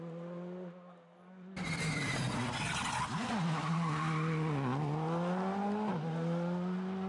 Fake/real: real